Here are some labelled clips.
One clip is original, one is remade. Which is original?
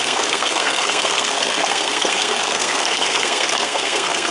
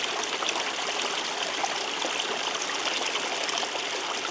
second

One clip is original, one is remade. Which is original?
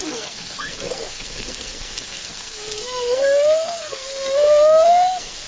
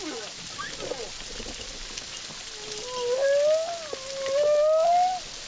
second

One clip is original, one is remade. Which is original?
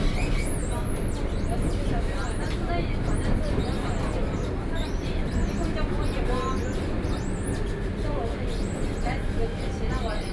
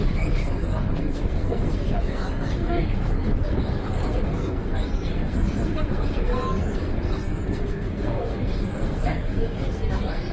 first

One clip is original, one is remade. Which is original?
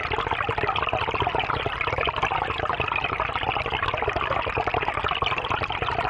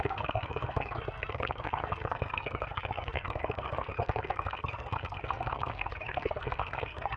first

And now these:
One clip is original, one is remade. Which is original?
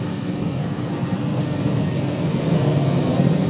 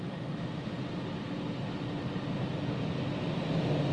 second